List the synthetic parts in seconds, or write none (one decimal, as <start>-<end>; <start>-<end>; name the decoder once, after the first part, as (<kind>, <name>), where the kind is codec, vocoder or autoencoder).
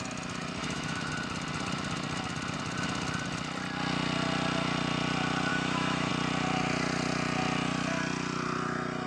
0.6-1.1 (autoencoder, DAC-VAE); 5.5-6.1